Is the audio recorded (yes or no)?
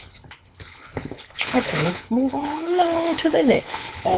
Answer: no